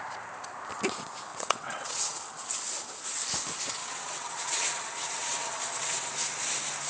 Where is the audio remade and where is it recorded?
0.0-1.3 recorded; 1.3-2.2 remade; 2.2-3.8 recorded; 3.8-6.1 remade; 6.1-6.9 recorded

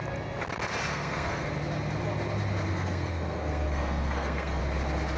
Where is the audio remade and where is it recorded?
0.0-0.9 recorded; 0.9-1.5 remade; 1.5-2.7 recorded; 2.7-4.6 remade; 4.6-5.2 recorded

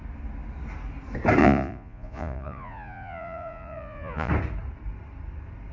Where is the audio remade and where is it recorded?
0.0-1.4 recorded; 1.4-4.3 remade; 4.3-5.7 recorded

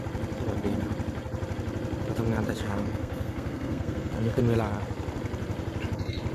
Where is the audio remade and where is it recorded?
0.0-2.6 recorded; 2.6-4.4 remade; 4.4-6.3 recorded

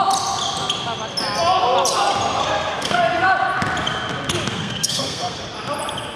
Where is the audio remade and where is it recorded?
0.0-2.4 recorded; 2.4-3.0 remade; 3.0-4.5 recorded; 4.5-5.4 remade; 5.4-6.2 recorded

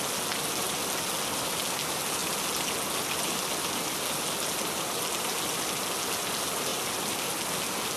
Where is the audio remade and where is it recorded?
0.0-8.0 recorded

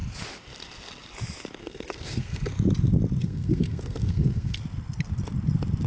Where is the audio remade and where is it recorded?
0.0-1.6 recorded; 1.6-2.5 remade; 2.5-3.2 recorded; 3.2-4.6 remade; 4.6-5.9 recorded

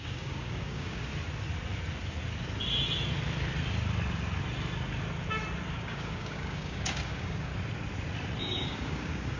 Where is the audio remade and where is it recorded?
0.0-1.1 remade; 1.1-5.7 recorded; 5.7-7.5 remade; 7.5-8.4 recorded; 8.4-9.4 remade